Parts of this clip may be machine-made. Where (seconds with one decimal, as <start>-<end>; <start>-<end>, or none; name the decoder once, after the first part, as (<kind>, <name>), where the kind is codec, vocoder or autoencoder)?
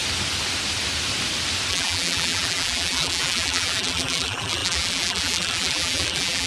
1.7-6.5 (vocoder, BigVGAN v2)